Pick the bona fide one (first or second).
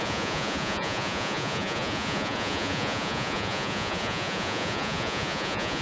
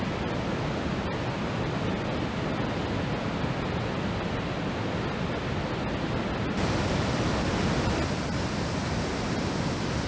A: second